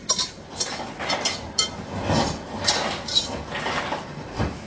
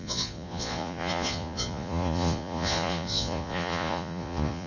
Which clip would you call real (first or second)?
first